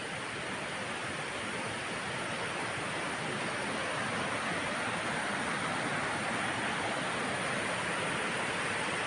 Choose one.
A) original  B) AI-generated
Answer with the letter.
A